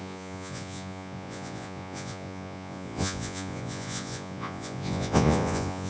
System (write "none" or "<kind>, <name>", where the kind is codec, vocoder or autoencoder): vocoder, Vocos